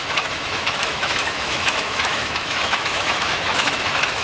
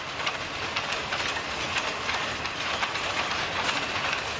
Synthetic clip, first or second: first